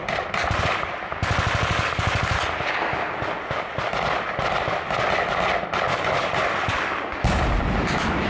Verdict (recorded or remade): recorded